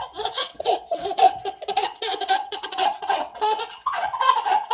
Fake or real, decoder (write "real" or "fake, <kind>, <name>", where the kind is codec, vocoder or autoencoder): fake, vocoder, WaveNeXt